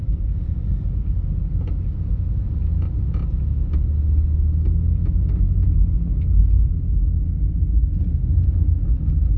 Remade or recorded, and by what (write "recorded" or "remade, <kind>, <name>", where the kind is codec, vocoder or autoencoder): recorded